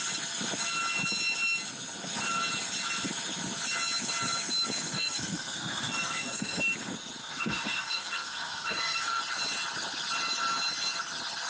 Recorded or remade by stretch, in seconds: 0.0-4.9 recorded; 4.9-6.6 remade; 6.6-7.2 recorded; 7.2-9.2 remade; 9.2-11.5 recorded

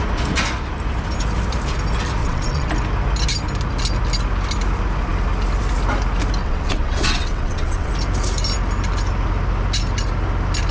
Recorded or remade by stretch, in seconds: 0.0-2.2 recorded; 2.2-2.7 remade; 2.7-6.4 recorded; 6.4-7.9 remade; 7.9-10.7 recorded

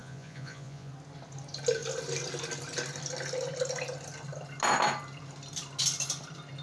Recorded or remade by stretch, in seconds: 0.0-0.9 remade; 0.9-6.6 recorded

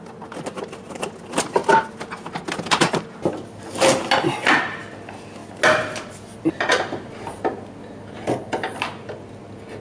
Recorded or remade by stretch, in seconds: 0.0-9.8 recorded